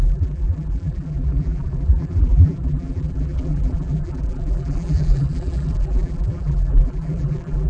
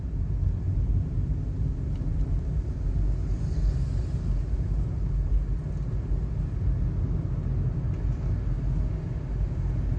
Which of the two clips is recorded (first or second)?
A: second